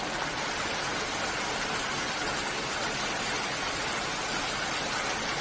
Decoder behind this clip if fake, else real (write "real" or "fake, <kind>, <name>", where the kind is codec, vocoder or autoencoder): real